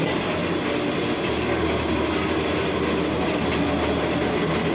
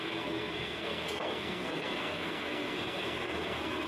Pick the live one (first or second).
first